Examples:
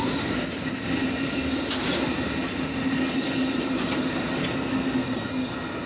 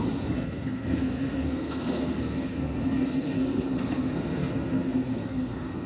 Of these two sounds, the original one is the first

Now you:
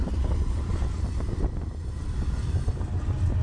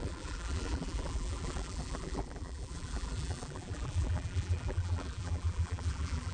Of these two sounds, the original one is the first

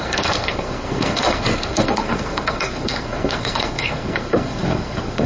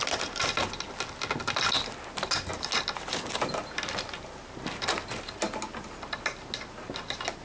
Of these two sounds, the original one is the second